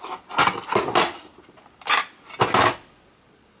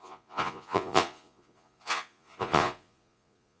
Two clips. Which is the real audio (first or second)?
first